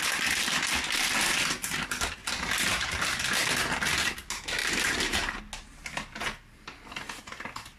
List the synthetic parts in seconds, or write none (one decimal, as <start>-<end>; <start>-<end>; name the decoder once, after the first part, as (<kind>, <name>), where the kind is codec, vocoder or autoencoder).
2.2-3.2 (vocoder, BigVGAN v2); 4.6-5.4